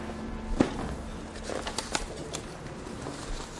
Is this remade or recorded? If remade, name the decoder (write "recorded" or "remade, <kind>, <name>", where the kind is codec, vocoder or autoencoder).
recorded